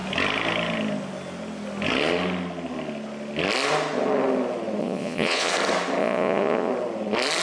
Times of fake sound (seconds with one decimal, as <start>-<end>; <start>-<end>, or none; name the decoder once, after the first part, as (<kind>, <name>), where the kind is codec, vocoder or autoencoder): 4.8-5.5 (vocoder, Vocos); 6.0-6.7